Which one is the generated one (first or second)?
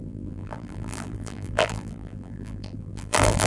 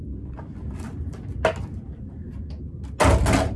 first